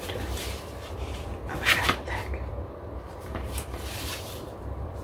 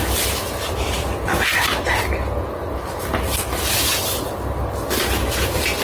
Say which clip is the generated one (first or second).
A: first